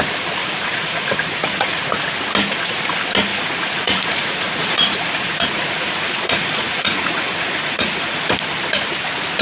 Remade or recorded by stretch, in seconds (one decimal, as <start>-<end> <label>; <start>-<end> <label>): 0.0-0.4 recorded; 0.4-1.8 remade; 1.8-3.3 recorded; 3.3-8.3 remade; 8.3-9.4 recorded